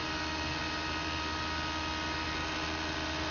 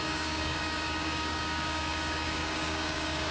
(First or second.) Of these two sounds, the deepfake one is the second